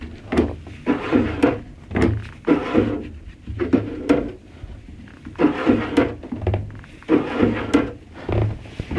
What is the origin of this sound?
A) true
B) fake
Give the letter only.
A